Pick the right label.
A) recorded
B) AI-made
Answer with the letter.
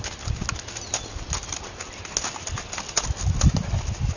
A